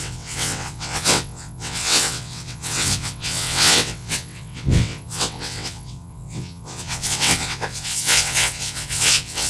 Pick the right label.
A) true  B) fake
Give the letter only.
B